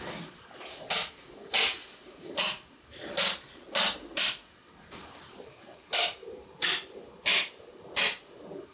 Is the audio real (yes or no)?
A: yes